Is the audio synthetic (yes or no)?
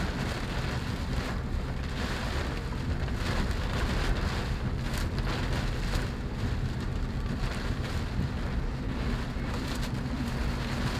no